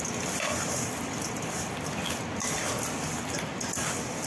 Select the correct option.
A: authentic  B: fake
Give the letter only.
A